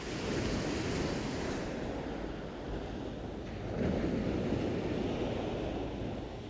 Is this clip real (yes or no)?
yes